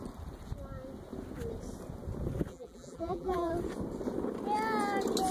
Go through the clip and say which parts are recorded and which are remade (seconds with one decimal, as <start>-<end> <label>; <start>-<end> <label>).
0.0-2.5 recorded; 2.5-3.5 remade; 3.5-5.3 recorded